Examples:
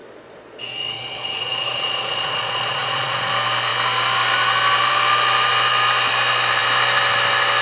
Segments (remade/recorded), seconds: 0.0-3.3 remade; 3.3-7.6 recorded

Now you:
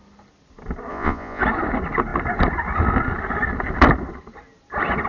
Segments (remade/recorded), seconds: 0.0-0.9 recorded; 0.9-1.4 remade; 1.4-5.1 recorded

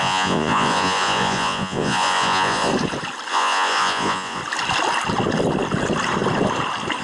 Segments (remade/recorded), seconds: 0.0-2.7 remade; 2.7-3.3 recorded; 3.3-4.4 remade; 4.4-7.0 recorded

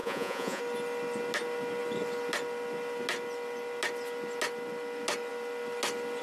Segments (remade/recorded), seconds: 0.0-0.6 remade; 0.6-6.2 recorded